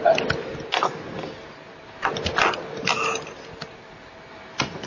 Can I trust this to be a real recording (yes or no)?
yes